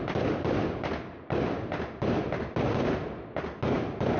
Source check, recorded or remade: recorded